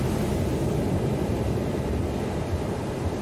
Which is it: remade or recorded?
recorded